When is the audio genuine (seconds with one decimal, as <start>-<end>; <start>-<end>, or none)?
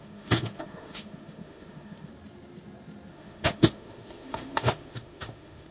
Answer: 2.1-3.1